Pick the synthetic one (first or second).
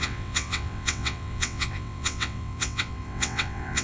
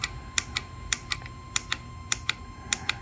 first